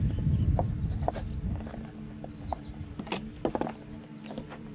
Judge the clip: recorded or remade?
remade